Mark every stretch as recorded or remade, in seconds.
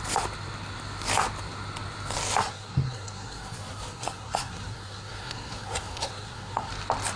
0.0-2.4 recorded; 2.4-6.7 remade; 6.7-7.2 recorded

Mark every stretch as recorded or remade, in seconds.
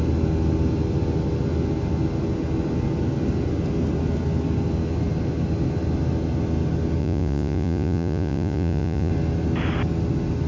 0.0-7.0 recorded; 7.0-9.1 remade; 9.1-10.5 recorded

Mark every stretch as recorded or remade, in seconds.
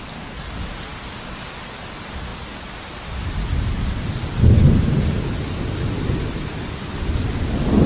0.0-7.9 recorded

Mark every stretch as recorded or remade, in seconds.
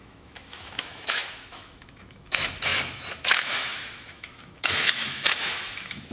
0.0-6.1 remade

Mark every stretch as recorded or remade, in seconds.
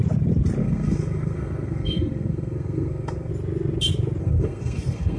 0.0-0.6 recorded; 0.6-3.3 remade; 3.3-4.2 recorded; 4.2-5.2 remade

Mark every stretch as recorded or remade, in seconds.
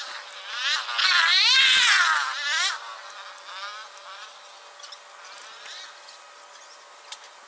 0.0-7.5 recorded